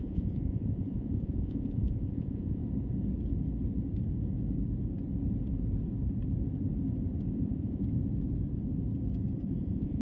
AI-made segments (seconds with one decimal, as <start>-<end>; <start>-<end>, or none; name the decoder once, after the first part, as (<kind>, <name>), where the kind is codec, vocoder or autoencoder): 0.0-2.6 (vocoder, Vocos); 7.3-7.8; 9.6-10.0